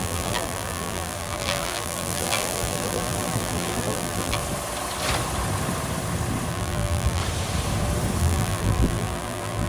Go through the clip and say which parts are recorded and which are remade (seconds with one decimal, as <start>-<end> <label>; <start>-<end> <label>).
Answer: 0.0-4.4 remade; 4.4-6.5 recorded; 6.5-7.2 remade; 7.2-8.2 recorded; 8.2-9.7 remade